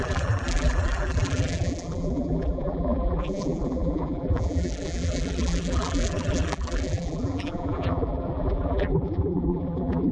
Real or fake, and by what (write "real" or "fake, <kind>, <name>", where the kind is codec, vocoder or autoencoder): fake, vocoder, BigVGAN v2